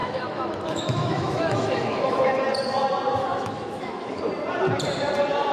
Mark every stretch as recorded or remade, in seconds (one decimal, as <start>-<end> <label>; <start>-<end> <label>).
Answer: 0.0-2.4 remade; 2.4-3.2 recorded; 3.2-4.2 remade; 4.2-5.5 recorded